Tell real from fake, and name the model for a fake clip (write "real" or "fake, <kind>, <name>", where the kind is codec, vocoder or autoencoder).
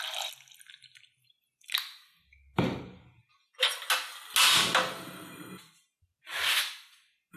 real